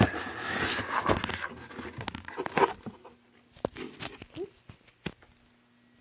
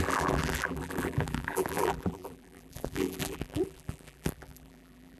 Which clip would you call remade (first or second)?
second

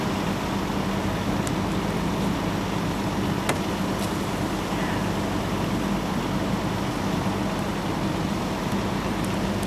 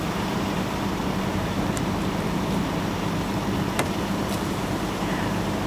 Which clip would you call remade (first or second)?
second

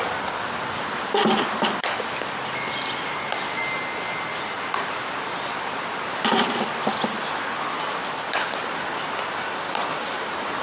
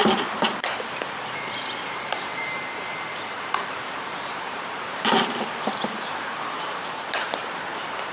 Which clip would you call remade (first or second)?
second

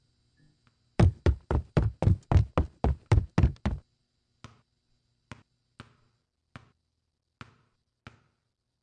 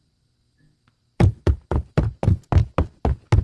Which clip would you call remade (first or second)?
second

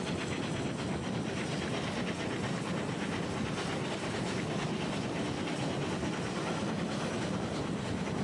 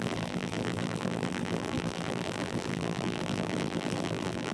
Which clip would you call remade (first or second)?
second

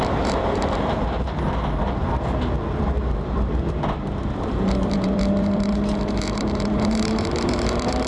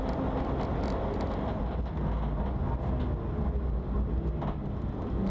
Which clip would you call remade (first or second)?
first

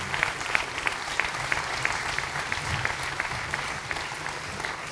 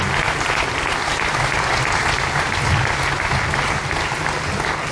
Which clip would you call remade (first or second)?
first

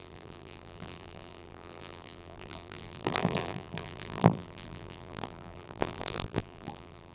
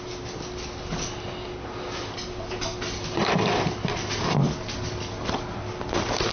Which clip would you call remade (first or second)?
first